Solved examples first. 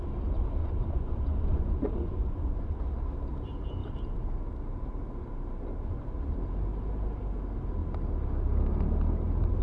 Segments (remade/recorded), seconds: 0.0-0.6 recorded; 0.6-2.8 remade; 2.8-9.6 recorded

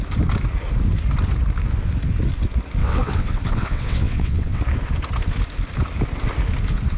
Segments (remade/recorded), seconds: 0.0-2.8 recorded; 2.8-4.6 remade; 4.6-7.0 recorded